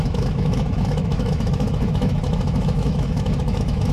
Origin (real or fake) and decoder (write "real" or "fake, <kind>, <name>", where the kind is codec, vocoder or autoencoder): fake, autoencoder, DAC-VAE